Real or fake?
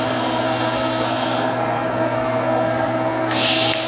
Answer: fake